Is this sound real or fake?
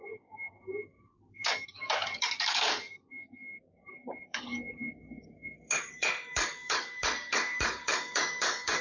fake